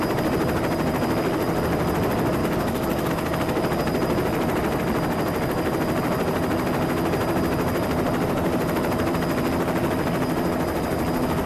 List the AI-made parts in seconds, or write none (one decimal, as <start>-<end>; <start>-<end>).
2.4-3.1